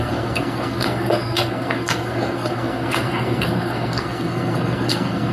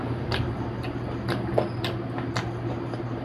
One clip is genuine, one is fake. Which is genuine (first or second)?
second